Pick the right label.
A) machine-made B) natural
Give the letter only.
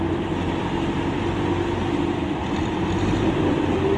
B